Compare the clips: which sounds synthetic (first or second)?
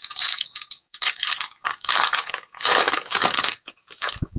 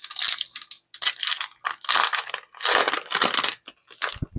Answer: first